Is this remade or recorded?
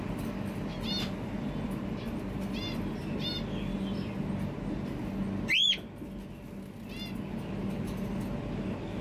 recorded